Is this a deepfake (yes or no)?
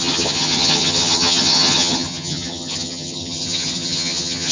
yes